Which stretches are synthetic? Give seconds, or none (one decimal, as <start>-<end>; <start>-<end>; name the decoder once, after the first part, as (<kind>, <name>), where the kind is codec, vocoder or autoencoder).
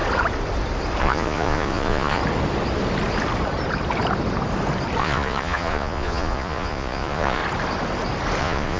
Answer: 1.0-2.2 (vocoder, Vocos); 5.0-7.4; 8.4-8.8